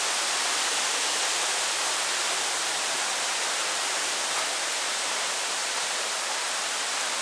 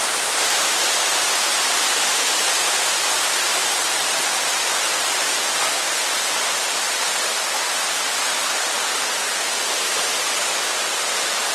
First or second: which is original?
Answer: second